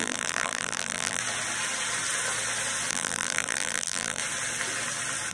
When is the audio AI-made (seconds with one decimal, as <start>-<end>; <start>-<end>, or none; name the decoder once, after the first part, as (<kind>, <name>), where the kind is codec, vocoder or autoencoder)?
0.0-1.2 (vocoder, BigVGAN v2); 2.9-4.2